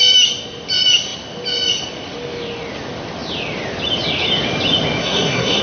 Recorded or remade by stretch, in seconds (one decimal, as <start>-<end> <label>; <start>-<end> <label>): 0.0-5.0 recorded; 5.0-5.6 remade